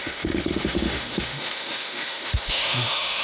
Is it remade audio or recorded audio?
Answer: remade